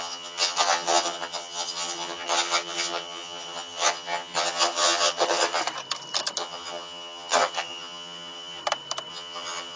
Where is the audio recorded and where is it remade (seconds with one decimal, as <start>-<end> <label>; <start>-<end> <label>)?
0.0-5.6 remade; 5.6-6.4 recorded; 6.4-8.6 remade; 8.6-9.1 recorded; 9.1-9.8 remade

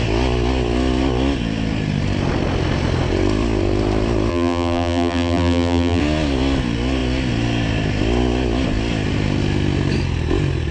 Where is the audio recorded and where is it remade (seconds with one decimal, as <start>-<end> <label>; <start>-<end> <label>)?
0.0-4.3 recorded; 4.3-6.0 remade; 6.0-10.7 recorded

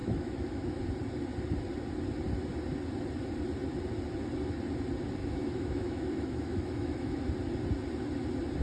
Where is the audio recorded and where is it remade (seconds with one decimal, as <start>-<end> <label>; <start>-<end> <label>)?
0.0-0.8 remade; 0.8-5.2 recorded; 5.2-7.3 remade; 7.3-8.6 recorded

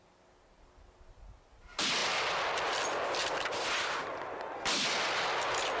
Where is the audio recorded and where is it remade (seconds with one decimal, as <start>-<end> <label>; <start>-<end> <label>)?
0.0-5.8 recorded